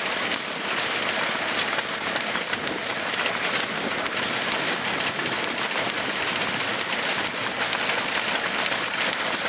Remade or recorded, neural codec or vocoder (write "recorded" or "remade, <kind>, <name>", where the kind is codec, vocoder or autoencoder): recorded